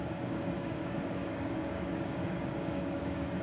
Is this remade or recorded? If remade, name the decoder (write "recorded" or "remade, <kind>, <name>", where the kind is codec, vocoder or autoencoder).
remade, codec, DAC